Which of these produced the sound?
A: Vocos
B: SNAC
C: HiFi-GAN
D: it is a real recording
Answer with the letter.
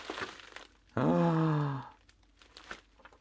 D